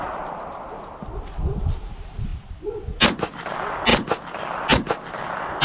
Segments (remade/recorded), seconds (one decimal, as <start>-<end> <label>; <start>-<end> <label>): 0.0-5.6 recorded